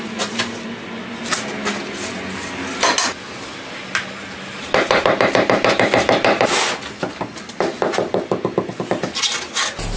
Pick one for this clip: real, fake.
real